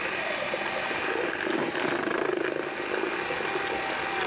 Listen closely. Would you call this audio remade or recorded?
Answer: recorded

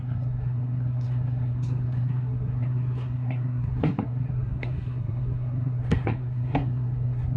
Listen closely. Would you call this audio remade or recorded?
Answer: remade